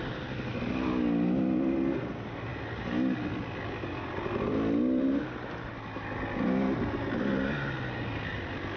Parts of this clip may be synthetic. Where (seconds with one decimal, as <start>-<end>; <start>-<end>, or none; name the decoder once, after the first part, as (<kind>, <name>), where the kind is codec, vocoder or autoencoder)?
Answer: none